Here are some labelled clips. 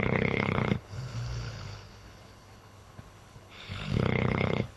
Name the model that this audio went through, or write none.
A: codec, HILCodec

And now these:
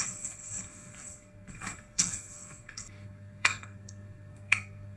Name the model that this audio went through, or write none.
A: codec, SNAC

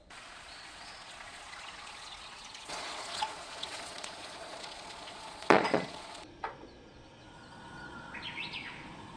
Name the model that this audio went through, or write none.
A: vocoder, Vocos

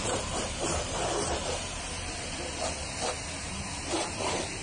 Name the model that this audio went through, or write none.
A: vocoder, BigVGAN v2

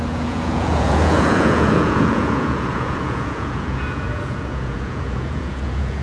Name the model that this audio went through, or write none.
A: vocoder, Vocos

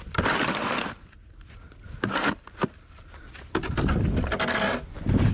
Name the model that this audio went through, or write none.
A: none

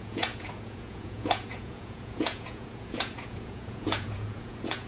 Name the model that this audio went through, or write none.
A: vocoder, Vocos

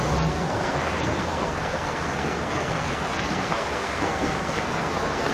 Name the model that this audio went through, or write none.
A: codec, SNAC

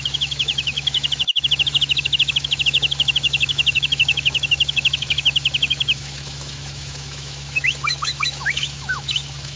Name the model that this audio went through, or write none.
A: autoencoder, DAC-VAE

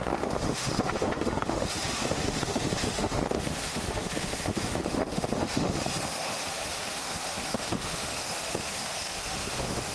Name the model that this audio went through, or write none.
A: autoencoder, DAC-VAE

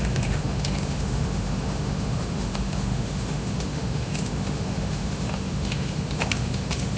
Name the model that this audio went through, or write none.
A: autoencoder, DAC-VAE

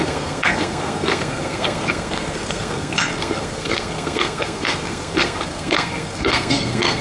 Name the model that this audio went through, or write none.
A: codec, SNAC